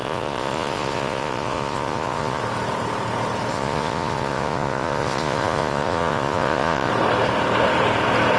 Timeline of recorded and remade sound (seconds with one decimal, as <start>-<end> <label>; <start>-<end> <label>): 0.0-2.4 remade; 2.4-3.5 recorded; 3.5-6.9 remade; 6.9-8.4 recorded